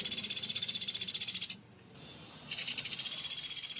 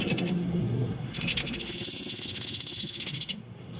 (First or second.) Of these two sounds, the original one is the first